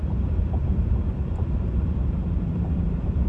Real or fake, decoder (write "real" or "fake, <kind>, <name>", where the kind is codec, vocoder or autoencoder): fake, vocoder, BigVGAN v2